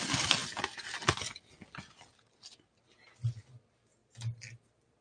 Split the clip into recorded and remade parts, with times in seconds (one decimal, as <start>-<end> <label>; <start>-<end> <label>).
0.0-5.0 recorded